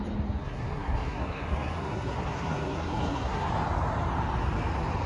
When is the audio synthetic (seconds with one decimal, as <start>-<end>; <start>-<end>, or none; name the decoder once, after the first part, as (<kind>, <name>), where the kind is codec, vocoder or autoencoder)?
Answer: 0.4-3.5 (codec, SNAC)